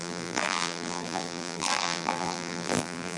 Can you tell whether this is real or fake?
fake